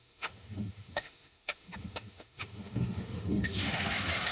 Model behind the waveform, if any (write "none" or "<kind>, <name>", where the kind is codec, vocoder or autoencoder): autoencoder, DAC-VAE